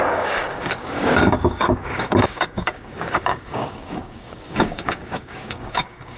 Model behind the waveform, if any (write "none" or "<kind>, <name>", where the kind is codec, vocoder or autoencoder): codec, DAC